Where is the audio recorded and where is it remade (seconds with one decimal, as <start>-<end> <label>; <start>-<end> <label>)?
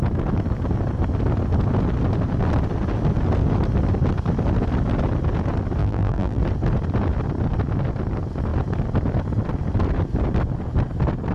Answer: 0.0-5.8 recorded; 5.8-6.4 remade; 6.4-11.3 recorded